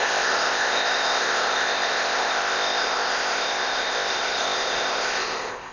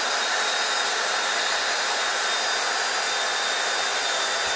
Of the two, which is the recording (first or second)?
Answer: second